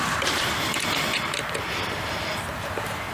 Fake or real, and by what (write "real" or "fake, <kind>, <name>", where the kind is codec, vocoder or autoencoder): fake, vocoder, BigVGAN v2